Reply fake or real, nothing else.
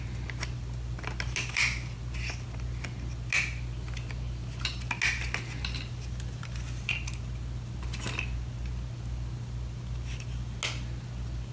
real